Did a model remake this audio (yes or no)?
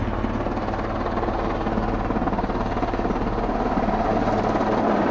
no